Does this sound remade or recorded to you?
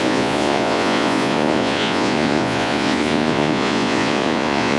remade